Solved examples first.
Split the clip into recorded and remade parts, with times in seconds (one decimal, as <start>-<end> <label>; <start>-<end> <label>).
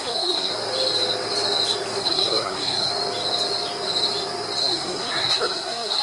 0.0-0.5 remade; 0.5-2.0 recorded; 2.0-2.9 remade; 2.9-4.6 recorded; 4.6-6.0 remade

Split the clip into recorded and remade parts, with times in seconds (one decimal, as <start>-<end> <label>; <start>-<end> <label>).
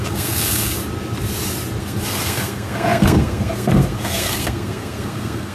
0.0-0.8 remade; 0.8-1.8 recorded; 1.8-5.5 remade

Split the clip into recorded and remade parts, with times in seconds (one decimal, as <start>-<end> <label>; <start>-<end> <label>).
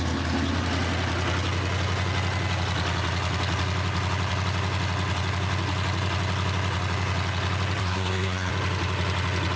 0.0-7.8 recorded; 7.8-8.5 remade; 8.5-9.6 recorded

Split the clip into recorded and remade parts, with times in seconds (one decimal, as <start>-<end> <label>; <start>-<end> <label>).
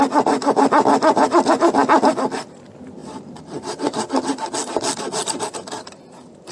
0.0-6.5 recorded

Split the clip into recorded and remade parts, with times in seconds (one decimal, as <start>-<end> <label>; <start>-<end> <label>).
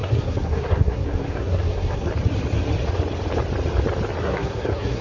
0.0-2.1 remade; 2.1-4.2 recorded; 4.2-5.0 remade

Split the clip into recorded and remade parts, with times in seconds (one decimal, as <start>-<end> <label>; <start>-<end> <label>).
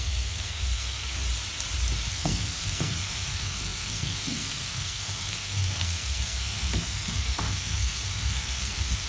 0.0-1.2 remade; 1.2-2.1 recorded; 2.1-9.1 remade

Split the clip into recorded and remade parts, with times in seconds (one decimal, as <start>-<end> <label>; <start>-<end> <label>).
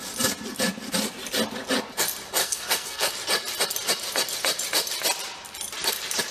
0.0-2.4 recorded; 2.4-3.1 remade; 3.1-6.3 recorded